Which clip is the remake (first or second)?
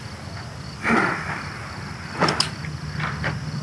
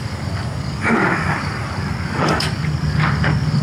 second